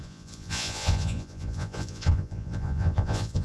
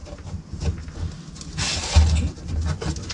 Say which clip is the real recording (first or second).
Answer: second